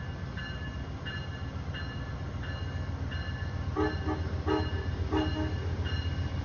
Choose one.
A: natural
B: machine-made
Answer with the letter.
A